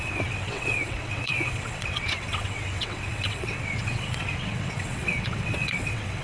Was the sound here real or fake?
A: fake